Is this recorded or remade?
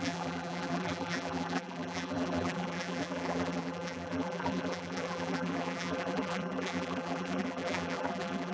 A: remade